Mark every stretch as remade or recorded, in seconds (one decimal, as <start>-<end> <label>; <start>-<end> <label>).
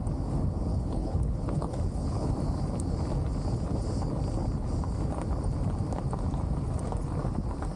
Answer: 0.0-0.7 recorded; 0.7-2.3 remade; 2.3-7.8 recorded